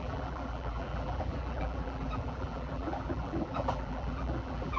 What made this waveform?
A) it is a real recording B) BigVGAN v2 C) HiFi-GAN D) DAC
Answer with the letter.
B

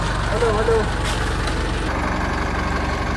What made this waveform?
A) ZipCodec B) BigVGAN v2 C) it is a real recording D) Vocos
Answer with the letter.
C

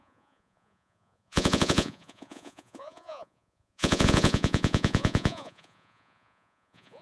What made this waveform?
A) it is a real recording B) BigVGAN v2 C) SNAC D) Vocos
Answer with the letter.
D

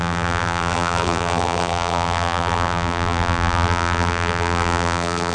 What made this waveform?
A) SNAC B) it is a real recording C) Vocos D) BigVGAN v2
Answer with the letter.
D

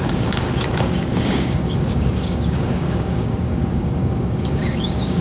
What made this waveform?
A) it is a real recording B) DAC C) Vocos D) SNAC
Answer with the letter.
B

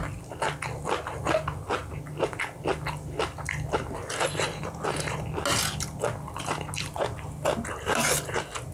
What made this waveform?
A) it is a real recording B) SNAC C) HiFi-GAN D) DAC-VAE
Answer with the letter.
A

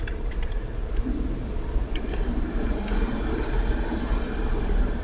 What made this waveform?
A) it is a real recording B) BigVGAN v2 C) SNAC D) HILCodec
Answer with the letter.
B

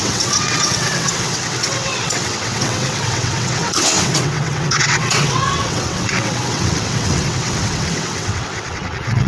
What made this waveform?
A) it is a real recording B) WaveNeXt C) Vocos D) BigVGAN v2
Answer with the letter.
B